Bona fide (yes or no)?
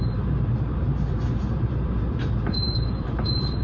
no